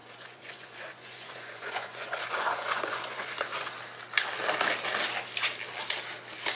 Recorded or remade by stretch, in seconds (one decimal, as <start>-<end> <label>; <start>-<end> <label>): 0.0-3.7 remade; 3.7-6.5 recorded